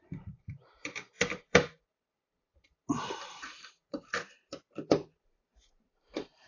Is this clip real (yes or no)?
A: no